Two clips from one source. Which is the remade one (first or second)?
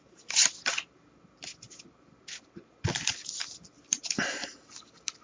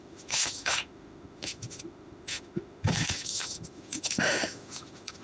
second